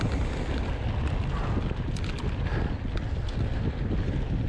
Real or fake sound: real